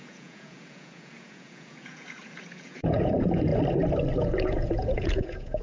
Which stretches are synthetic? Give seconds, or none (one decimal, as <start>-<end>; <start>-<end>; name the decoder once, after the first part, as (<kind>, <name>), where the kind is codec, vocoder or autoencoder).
0.0-3.5 (vocoder, Vocos); 4.2-5.6